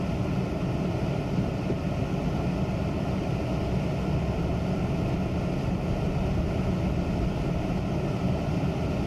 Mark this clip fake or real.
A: real